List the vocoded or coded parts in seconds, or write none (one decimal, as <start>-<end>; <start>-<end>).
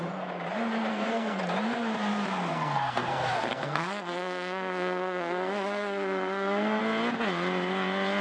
0.9-1.4; 2.5-6.8